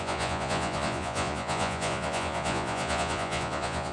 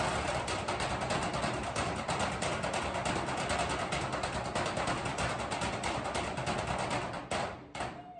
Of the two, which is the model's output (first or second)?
first